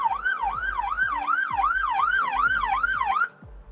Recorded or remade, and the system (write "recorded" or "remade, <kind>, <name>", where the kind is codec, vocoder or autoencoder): recorded